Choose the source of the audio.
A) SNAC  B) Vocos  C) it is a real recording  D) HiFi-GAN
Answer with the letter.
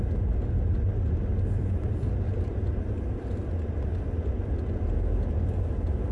C